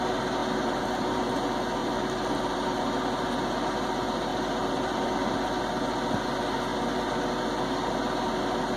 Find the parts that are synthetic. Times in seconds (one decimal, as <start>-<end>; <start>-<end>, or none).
0.4-1.2; 1.8-2.8; 4.3-5.6; 6.7-7.3

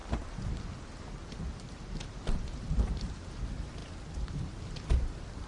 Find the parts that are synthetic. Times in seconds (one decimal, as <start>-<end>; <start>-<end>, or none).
1.2-3.4

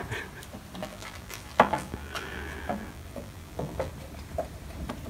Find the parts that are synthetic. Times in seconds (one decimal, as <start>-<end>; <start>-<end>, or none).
0.8-3.9

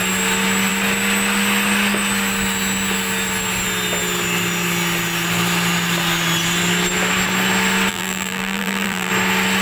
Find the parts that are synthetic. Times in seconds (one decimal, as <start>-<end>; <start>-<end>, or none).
7.9-9.1

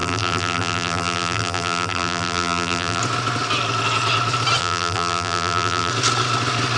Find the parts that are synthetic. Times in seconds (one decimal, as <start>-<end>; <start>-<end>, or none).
0.0-3.0; 4.6-5.9

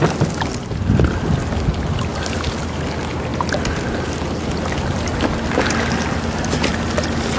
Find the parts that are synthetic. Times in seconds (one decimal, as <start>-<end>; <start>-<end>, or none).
2.1-2.6; 6.7-7.4

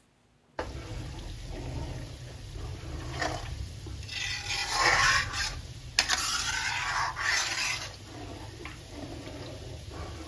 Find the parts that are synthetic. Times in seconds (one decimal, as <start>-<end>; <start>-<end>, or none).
2.7-3.7; 4.6-5.8

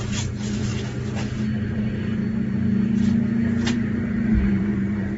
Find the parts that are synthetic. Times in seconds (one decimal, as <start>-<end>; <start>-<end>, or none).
0.0-0.7; 1.6-2.2; 3.7-5.2